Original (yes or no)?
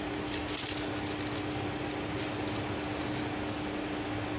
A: yes